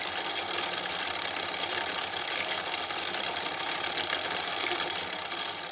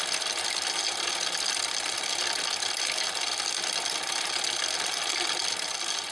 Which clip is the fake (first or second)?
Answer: first